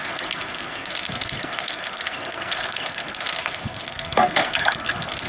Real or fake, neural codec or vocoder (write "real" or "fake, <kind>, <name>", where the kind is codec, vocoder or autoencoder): fake, codec, SNAC